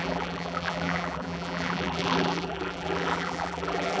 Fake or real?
fake